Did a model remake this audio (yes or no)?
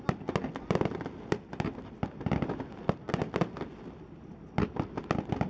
no